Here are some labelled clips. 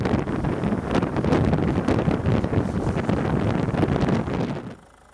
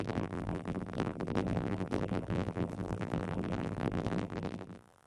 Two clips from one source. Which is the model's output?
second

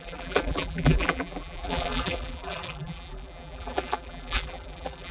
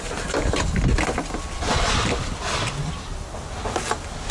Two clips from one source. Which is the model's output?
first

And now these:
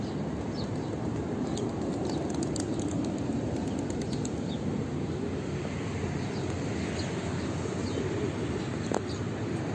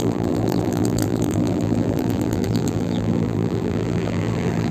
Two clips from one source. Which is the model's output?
second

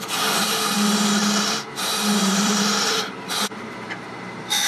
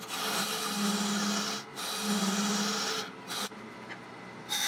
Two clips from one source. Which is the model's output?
first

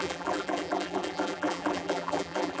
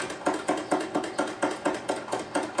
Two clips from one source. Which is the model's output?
first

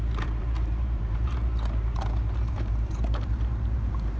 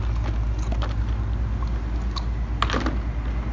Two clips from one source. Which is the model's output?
first